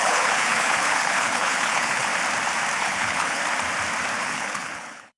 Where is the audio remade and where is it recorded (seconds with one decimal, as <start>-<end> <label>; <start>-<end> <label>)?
0.0-2.1 remade; 2.1-2.8 recorded; 2.8-3.4 remade; 3.4-4.2 recorded; 4.2-5.2 remade